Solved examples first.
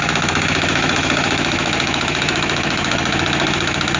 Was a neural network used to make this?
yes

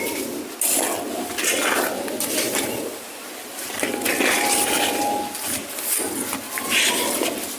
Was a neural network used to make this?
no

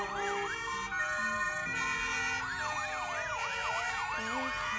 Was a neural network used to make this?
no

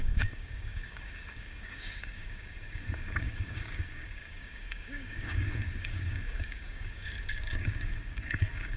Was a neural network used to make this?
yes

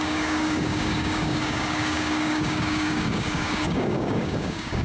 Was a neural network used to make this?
yes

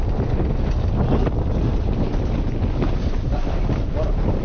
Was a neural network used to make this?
no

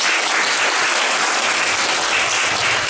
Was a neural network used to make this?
no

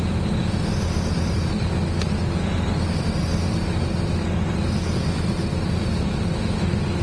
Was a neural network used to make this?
no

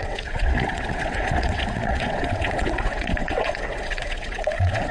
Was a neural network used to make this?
yes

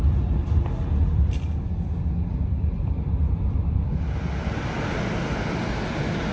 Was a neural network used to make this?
no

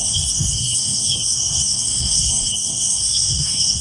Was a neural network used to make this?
yes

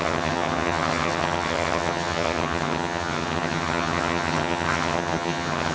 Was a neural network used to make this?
yes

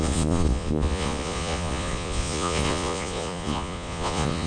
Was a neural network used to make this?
yes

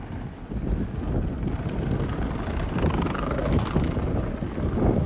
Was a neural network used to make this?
no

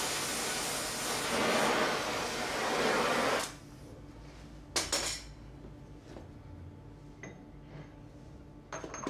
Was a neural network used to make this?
no